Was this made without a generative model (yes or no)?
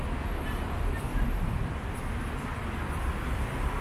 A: yes